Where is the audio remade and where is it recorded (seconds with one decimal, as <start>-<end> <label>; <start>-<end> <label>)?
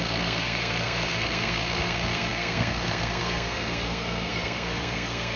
0.0-5.4 remade